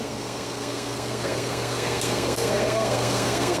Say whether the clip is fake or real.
fake